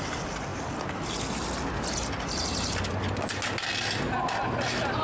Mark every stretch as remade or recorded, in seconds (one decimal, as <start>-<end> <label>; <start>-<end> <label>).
0.0-5.0 recorded